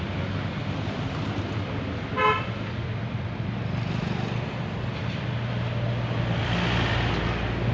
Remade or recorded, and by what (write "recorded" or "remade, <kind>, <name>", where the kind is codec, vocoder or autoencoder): recorded